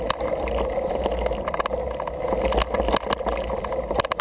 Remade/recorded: recorded